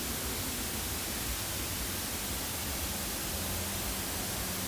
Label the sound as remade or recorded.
recorded